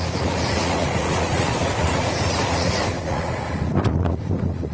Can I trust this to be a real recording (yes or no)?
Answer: no